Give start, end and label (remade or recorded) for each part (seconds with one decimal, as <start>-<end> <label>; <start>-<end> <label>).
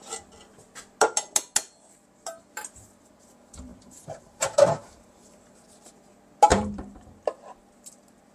0.0-3.7 recorded; 3.7-5.9 remade; 5.9-6.5 recorded; 6.5-7.1 remade; 7.1-8.3 recorded